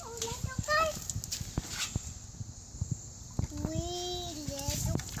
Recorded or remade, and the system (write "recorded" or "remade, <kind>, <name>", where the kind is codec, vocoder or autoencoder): recorded